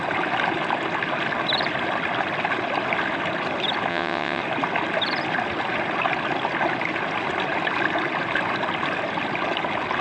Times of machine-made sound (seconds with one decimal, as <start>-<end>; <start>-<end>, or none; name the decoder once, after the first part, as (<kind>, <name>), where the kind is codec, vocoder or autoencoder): 3.9-4.4 (vocoder, WaveNeXt)